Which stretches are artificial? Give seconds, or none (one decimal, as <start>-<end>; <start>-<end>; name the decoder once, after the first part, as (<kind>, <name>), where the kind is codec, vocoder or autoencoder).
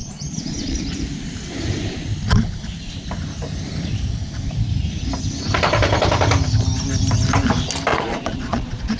0.0-0.8 (vocoder, Vocos); 7.9-9.0